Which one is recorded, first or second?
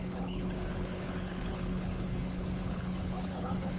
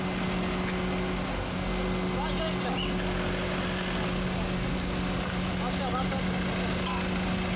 second